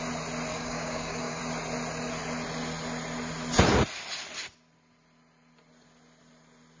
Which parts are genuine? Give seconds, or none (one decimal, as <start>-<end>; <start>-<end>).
0.0-0.5; 1.4-6.8